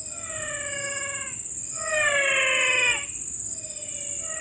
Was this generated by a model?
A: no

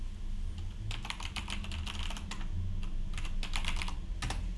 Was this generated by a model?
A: no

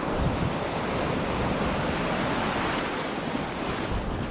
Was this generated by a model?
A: yes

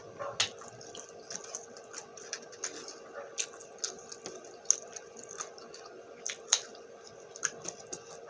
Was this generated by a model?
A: no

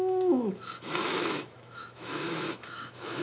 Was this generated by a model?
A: yes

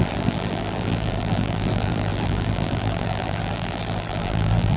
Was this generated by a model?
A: yes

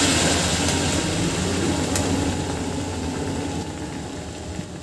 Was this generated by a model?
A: no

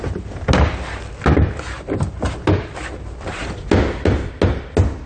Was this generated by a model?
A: no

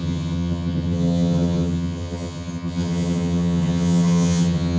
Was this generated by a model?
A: yes